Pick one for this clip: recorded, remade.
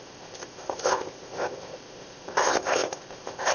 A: remade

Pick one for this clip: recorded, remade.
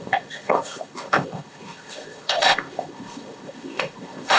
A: remade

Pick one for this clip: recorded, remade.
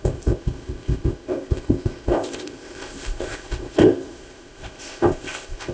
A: remade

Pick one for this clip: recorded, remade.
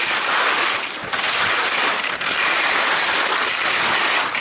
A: recorded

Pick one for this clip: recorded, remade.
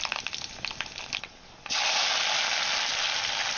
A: recorded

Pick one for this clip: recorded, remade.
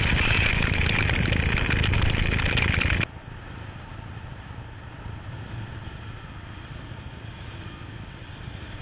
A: recorded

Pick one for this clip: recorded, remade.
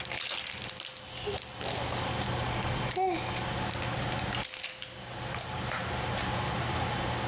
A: recorded